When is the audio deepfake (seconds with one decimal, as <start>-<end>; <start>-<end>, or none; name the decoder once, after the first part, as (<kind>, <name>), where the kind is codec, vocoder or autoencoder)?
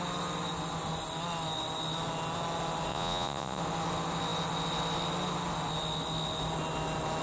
2.9-3.6 (vocoder, Vocos)